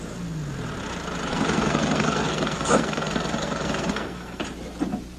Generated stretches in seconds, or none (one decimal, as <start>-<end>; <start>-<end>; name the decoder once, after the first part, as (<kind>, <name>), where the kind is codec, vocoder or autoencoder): 1.3-4.4 (codec, SNAC)